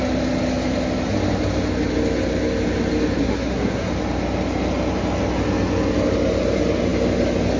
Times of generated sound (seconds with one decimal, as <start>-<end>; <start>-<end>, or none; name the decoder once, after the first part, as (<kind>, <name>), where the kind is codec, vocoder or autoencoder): 3.2-3.9 (codec, SNAC)